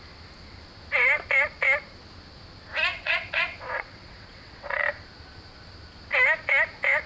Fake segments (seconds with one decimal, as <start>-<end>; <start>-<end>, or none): 2.9-4.8